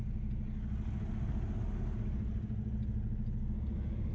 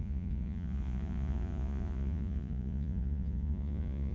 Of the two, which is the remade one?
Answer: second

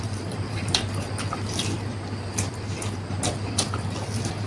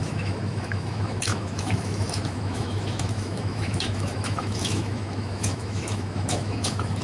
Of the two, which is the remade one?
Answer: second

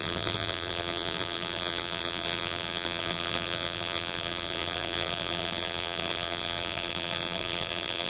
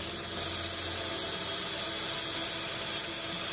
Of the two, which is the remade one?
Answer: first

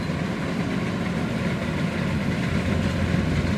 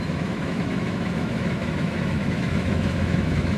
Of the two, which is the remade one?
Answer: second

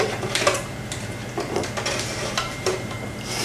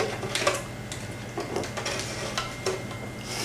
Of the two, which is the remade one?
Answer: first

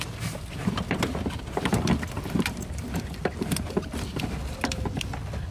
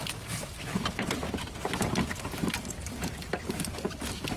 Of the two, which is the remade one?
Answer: first